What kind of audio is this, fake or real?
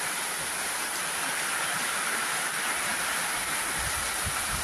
real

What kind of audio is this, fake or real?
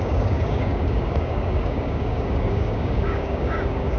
fake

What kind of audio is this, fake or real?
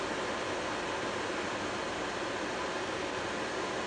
real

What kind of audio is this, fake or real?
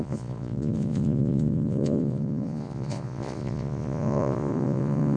fake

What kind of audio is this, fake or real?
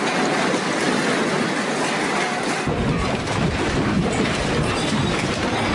real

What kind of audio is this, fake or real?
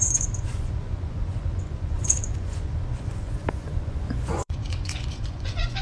fake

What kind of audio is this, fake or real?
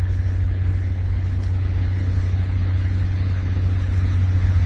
fake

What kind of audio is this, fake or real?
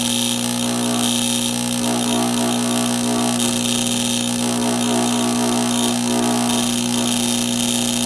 real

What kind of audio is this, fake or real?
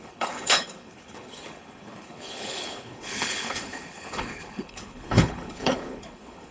fake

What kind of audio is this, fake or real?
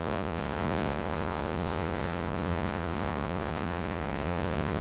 fake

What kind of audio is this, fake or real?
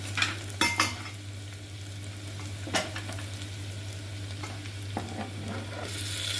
real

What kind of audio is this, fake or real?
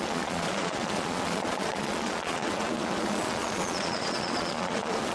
fake